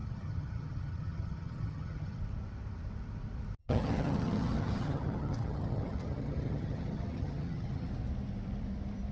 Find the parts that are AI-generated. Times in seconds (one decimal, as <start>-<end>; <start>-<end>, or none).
0.0-2.2; 3.6-7.9